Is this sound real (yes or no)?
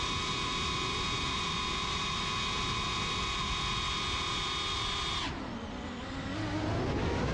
yes